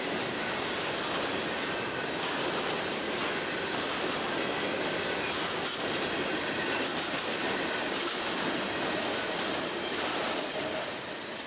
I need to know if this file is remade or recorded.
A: recorded